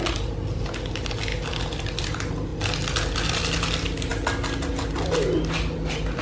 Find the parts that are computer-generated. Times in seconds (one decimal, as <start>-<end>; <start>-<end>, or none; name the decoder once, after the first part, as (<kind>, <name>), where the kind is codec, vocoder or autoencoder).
none